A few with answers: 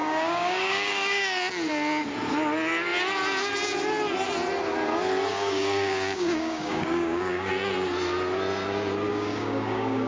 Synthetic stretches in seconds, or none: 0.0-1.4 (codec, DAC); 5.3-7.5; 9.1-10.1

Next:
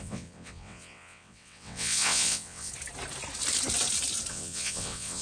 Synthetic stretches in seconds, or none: 0.0-2.7 (vocoder, WaveNeXt); 4.3-5.2

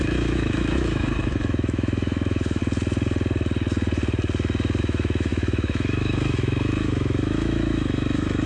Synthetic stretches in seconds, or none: 0.0-2.6 (autoencoder, DAC-VAE); 4.8-8.5

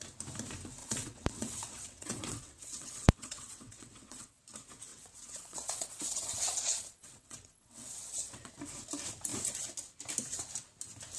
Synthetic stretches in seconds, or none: 0.8-4.4 (vocoder, WaveNeXt); 4.9-8.5

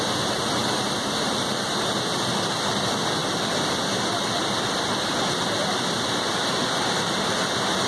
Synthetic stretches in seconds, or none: none